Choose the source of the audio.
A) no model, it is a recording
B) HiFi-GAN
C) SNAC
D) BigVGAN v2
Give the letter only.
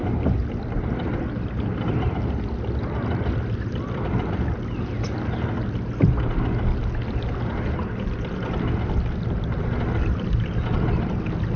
A